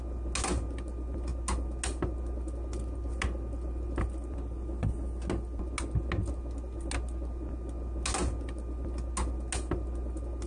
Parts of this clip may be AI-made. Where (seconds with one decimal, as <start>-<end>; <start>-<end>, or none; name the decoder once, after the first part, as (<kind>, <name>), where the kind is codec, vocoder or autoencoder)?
none